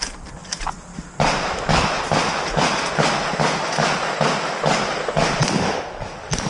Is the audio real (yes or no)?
yes